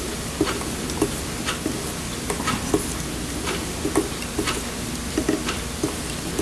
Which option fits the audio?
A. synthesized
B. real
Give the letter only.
B